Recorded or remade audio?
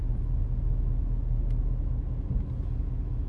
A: recorded